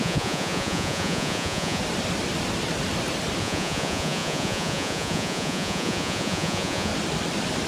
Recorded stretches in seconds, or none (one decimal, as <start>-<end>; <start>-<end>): 1.8-3.4; 6.9-7.7